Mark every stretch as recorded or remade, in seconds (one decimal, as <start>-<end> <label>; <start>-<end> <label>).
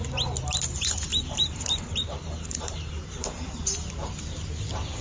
0.0-1.1 recorded; 1.1-3.5 remade; 3.5-5.0 recorded